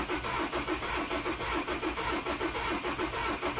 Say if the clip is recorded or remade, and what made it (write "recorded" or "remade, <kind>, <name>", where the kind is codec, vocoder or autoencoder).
recorded